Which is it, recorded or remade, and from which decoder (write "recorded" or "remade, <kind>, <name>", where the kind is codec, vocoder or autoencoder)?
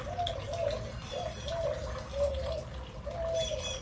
recorded